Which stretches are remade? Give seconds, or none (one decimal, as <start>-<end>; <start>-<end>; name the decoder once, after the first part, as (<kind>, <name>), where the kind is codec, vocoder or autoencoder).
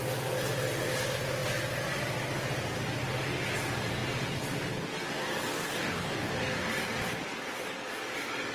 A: 5.5-6.3 (codec, DAC)